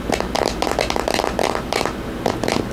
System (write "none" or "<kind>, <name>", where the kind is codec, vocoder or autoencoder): none